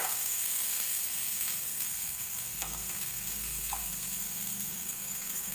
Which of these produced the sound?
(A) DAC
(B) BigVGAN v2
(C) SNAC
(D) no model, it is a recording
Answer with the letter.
C